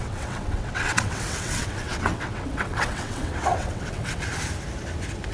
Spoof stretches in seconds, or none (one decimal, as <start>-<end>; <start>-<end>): 0.0-4.3